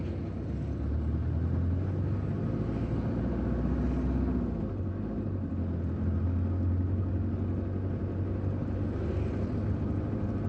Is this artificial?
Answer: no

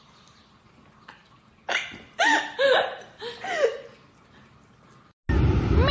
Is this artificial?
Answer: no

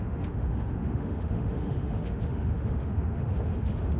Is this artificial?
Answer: yes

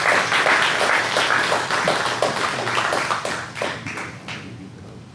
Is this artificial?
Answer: no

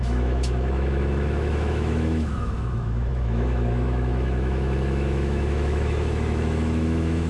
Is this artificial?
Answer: yes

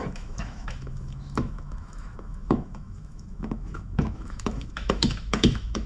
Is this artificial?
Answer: yes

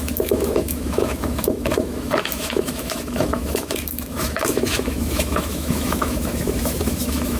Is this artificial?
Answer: yes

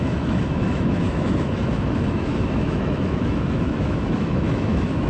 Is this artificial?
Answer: yes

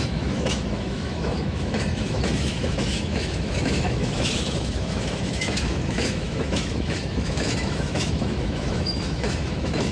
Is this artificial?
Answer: yes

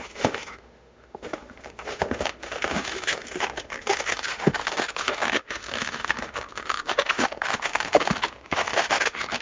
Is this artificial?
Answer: yes